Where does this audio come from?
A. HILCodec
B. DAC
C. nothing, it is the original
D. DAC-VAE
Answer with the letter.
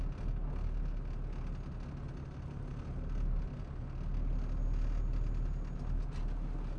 C